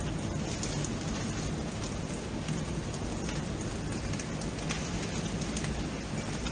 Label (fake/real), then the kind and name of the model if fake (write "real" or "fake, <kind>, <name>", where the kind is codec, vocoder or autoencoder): real